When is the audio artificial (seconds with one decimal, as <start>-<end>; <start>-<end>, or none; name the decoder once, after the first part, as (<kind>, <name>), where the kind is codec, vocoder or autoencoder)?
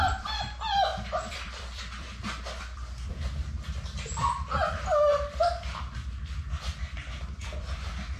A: 0.9-3.1 (vocoder, BigVGAN v2)